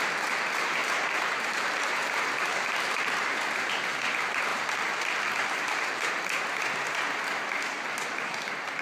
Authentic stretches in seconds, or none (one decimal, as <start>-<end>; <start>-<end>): 0.0-0.8; 3.7-4.5; 6.1-8.8